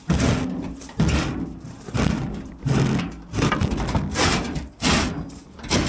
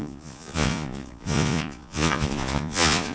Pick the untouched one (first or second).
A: first